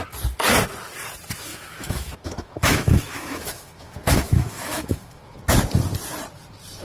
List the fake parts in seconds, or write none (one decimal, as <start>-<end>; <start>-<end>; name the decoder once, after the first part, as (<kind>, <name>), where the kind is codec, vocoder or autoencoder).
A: 1.5-5.4 (autoencoder, DAC-VAE)